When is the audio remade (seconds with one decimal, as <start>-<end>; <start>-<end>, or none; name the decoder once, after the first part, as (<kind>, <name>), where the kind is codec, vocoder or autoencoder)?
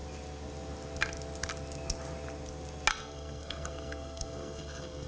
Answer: 2.9-5.1 (codec, SNAC)